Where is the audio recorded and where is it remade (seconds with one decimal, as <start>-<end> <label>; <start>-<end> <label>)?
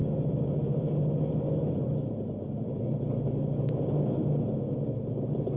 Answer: 0.0-5.6 recorded